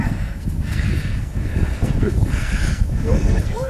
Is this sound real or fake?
fake